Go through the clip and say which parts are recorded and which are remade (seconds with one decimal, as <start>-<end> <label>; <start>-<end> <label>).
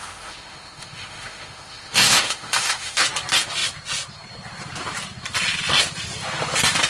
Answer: 0.0-3.0 remade; 3.0-6.9 recorded